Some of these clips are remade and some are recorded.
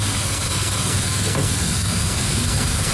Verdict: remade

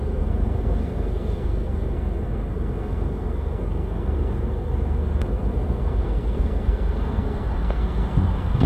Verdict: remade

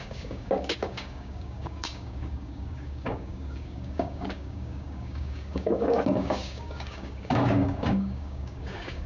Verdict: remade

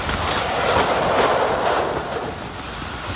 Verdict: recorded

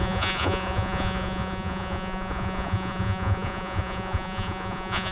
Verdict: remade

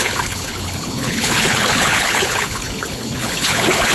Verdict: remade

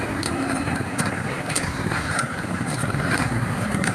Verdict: remade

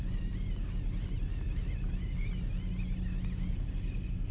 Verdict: recorded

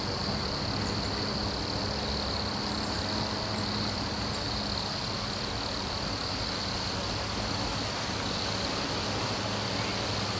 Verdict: recorded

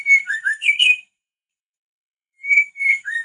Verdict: remade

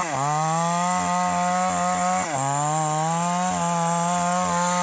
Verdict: recorded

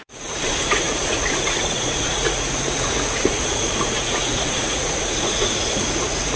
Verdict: remade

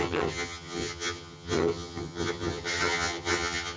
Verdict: remade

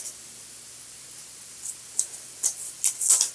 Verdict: recorded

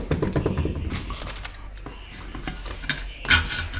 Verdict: recorded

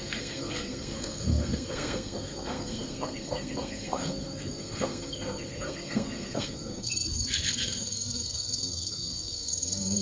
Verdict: remade